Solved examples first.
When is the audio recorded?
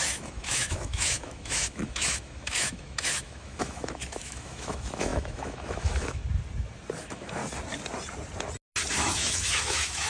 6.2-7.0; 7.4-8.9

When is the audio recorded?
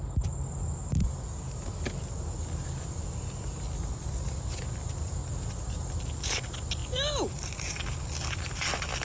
0.0-9.0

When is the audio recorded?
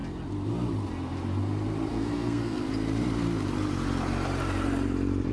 0.0-1.9; 2.7-5.3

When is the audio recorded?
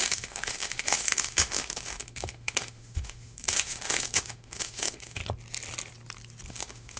5.2-6.5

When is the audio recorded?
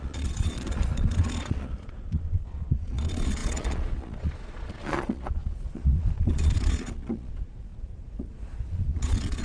none